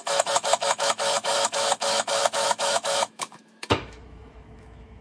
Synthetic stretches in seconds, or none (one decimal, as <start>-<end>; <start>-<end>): 0.0-5.0